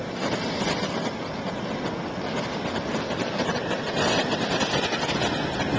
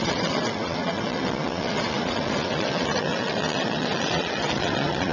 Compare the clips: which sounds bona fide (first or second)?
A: first